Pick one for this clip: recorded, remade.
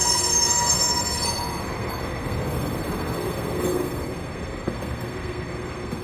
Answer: remade